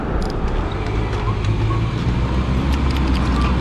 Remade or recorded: recorded